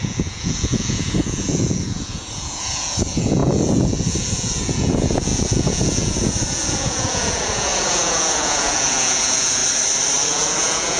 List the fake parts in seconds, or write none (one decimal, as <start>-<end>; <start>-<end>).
0.0-9.6; 10.3-11.0